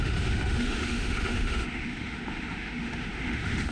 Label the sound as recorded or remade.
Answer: remade